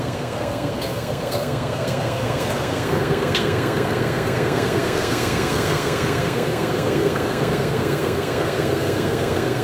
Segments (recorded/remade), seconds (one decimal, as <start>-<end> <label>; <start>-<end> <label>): 0.0-9.6 remade